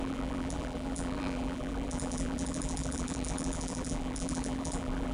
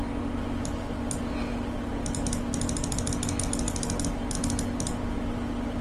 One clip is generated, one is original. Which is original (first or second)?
second